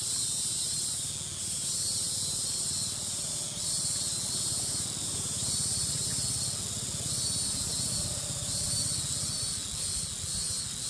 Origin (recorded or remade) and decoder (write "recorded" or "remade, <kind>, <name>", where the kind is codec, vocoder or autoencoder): recorded